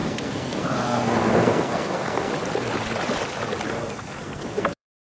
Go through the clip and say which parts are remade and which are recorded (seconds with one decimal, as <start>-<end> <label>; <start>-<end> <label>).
0.0-2.3 remade; 2.3-3.7 recorded; 3.7-5.1 remade